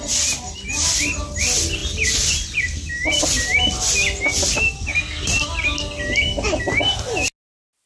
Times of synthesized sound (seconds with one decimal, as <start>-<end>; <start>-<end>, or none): none

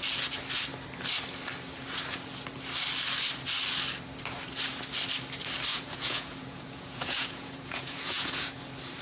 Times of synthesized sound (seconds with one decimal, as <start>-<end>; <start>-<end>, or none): 5.7-8.6